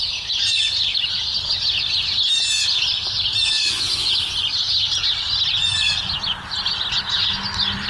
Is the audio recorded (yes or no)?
yes